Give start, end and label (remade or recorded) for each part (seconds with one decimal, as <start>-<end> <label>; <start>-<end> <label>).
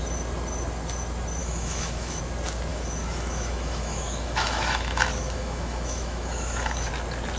0.0-1.4 recorded; 1.4-2.2 remade; 2.2-2.7 recorded; 2.7-6.9 remade; 6.9-7.4 recorded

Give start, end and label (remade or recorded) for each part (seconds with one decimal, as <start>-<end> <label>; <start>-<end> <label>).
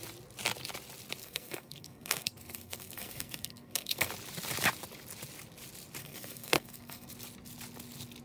0.0-1.2 recorded; 1.2-4.1 remade; 4.1-6.0 recorded; 6.0-7.1 remade; 7.1-8.2 recorded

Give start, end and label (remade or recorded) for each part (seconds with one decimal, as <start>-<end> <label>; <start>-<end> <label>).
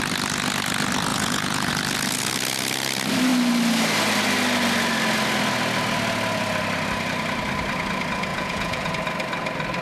0.0-1.1 recorded; 1.1-1.7 remade; 1.7-8.3 recorded; 8.3-8.9 remade; 8.9-9.8 recorded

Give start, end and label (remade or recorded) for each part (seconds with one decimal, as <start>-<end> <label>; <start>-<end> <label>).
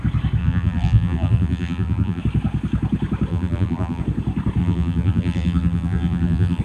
0.0-0.4 recorded; 0.4-2.2 remade; 2.2-3.3 recorded; 3.3-4.0 remade; 4.0-4.6 recorded; 4.6-6.6 remade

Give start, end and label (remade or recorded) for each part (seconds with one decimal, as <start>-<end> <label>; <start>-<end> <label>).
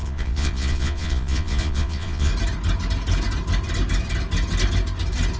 0.0-2.3 remade; 2.3-5.4 recorded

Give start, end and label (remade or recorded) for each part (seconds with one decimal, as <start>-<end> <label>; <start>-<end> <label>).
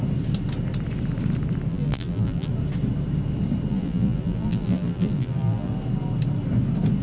0.0-1.7 recorded; 1.7-2.5 remade; 2.5-3.7 recorded; 3.7-5.7 remade; 5.7-7.0 recorded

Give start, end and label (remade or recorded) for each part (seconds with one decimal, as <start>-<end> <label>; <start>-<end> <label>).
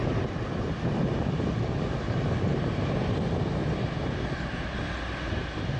0.0-1.1 remade; 1.1-2.5 recorded; 2.5-4.1 remade; 4.1-5.8 recorded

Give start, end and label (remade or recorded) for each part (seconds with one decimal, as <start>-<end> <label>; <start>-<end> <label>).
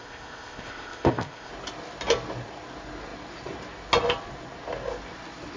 0.0-1.5 remade; 1.5-5.6 recorded